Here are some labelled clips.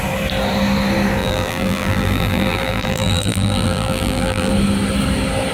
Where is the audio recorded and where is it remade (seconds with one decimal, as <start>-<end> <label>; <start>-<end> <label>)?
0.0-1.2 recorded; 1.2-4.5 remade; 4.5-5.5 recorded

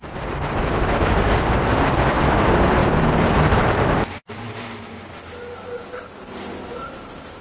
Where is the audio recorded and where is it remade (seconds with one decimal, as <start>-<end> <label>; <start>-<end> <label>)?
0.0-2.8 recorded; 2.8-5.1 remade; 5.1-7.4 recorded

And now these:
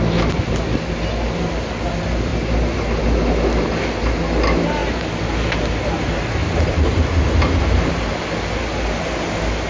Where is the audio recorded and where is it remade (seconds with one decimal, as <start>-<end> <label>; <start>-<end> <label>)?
0.0-6.4 recorded; 6.4-8.2 remade; 8.2-9.7 recorded

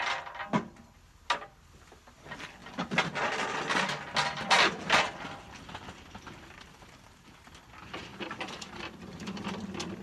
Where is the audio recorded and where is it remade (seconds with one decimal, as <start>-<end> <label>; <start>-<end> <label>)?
0.0-8.1 recorded; 8.1-9.4 remade; 9.4-10.0 recorded

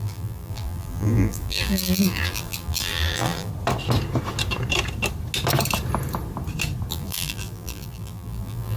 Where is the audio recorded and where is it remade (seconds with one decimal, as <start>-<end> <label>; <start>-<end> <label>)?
0.0-3.5 remade; 3.5-6.9 recorded; 6.9-8.8 remade

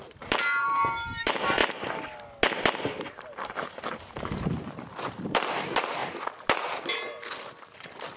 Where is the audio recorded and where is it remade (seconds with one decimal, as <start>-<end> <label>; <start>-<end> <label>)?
0.0-1.6 remade; 1.6-2.8 recorded; 2.8-6.0 remade; 6.0-8.2 recorded